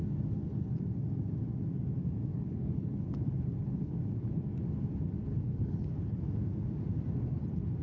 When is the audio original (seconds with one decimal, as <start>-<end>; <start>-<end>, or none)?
0.0-2.3; 4.4-5.3; 6.2-7.8